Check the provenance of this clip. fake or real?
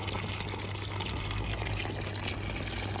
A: real